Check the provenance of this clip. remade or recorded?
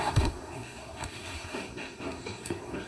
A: remade